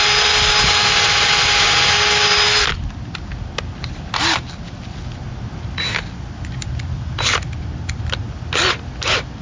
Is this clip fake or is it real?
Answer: real